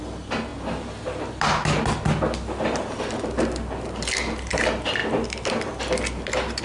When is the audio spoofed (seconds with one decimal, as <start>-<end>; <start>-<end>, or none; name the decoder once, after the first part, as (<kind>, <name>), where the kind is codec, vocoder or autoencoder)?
none